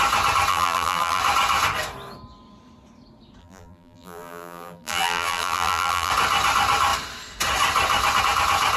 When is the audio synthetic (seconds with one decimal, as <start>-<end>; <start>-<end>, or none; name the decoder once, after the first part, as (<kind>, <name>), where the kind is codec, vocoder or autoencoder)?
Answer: 0.5-1.2 (vocoder, BigVGAN v2); 3.4-6.1